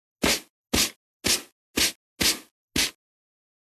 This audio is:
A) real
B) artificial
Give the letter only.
A